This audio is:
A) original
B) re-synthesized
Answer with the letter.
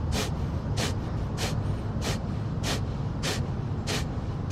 B